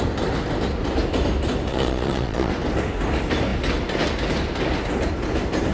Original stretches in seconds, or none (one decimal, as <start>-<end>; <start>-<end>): 0.0-1.7; 2.5-5.7